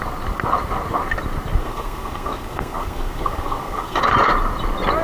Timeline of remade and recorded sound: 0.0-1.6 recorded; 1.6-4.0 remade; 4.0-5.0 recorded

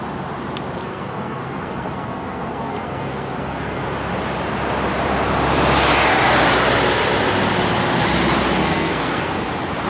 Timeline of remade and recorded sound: 0.0-0.8 recorded; 0.8-3.8 remade; 3.8-8.6 recorded; 8.6-9.3 remade; 9.3-9.9 recorded